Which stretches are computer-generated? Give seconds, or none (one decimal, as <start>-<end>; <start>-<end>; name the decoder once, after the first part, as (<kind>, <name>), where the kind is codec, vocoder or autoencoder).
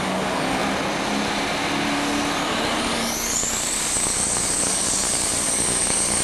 0.0-0.6 (codec, DAC); 2.8-6.2